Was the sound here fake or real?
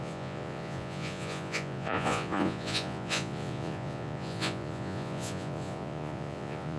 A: fake